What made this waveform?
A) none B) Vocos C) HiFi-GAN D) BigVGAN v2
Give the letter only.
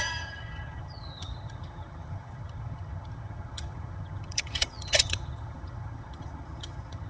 C